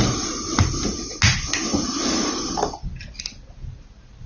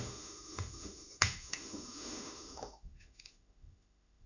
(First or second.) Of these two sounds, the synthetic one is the second